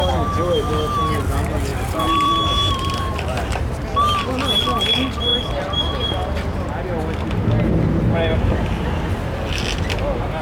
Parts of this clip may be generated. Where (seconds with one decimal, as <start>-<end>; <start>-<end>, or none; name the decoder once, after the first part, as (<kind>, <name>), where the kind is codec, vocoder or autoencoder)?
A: 1.7-3.8 (vocoder, BigVGAN v2)

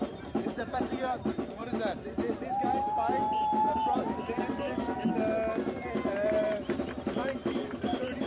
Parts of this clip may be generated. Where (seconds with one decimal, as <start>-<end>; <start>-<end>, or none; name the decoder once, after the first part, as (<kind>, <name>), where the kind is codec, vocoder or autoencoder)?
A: 0.0-1.6 (vocoder, BigVGAN v2); 6.3-8.3

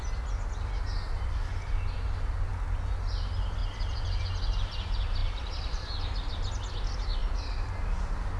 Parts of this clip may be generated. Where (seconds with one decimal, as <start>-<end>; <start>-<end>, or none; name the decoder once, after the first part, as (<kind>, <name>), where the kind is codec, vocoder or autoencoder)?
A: 3.6-4.2 (vocoder, BigVGAN v2); 5.2-6.5; 7.2-7.7

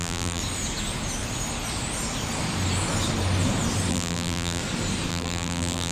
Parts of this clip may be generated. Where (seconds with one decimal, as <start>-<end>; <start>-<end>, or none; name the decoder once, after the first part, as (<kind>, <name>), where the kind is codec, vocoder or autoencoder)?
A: 0.0-0.4 (vocoder, BigVGAN v2); 3.9-4.6; 5.1-5.9

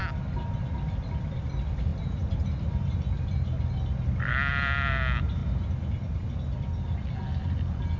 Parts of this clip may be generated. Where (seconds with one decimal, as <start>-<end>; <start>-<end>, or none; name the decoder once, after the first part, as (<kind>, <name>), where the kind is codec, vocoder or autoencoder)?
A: 0.6-1.9 (vocoder, BigVGAN v2); 4.5-5.4; 7.3-8.0

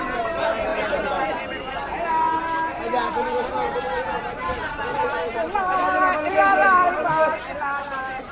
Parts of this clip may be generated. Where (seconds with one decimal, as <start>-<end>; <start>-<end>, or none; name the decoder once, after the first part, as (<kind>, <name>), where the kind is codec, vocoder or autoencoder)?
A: 2.7-3.5 (vocoder, BigVGAN v2); 4.6-7.6